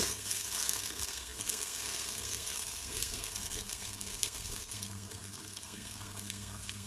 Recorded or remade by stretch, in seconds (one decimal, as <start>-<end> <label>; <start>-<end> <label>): 0.0-6.9 remade